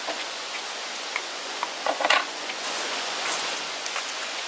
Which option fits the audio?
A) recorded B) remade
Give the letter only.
B